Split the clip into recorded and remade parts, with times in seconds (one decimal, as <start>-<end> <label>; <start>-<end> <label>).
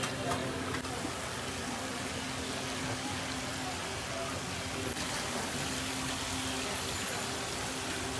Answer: 0.0-8.2 recorded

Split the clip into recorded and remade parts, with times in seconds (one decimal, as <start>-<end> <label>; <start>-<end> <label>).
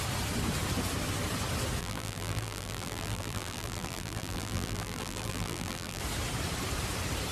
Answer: 0.0-1.8 recorded; 1.8-6.0 remade; 6.0-7.3 recorded